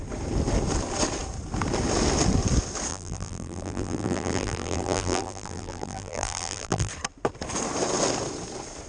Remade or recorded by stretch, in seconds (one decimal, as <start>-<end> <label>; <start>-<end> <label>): 0.0-2.9 recorded; 2.9-6.9 remade; 6.9-8.9 recorded